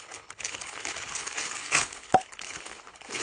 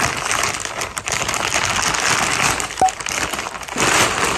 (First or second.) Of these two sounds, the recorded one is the second